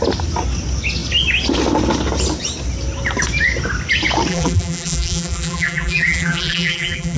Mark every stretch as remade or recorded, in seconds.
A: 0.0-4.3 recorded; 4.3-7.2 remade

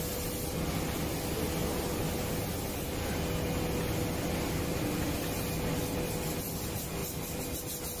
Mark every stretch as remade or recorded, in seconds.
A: 0.0-7.0 recorded; 7.0-7.6 remade; 7.6-8.0 recorded

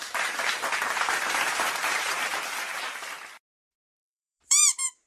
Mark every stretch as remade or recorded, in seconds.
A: 0.0-2.3 remade; 2.3-3.5 recorded; 3.5-5.1 remade

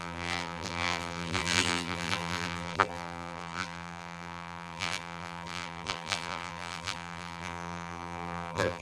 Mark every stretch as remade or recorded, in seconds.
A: 0.0-8.8 remade

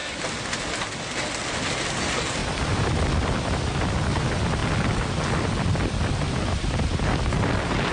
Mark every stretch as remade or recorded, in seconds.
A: 0.0-2.4 recorded; 2.4-4.0 remade; 4.0-4.6 recorded; 4.6-7.9 remade

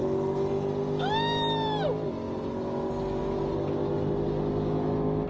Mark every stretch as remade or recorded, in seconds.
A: 0.0-5.3 recorded

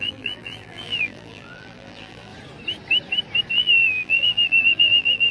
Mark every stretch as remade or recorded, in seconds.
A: 0.0-2.3 remade; 2.3-3.5 recorded; 3.5-5.3 remade